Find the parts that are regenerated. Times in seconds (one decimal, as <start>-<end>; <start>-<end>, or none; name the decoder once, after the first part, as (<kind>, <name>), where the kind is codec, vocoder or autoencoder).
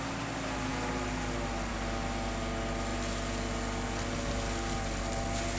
none